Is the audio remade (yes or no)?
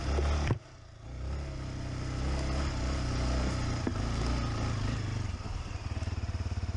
no